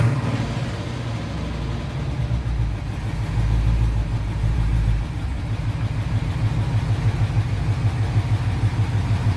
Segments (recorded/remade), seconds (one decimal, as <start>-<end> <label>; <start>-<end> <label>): 0.0-4.0 recorded; 4.0-6.3 remade; 6.3-9.4 recorded